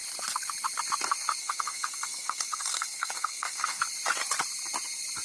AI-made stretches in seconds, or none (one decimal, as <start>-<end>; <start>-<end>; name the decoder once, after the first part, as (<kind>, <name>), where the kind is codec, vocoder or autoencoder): 1.4-3.8 (codec, SNAC)